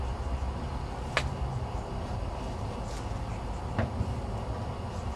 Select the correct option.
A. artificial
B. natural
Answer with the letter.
B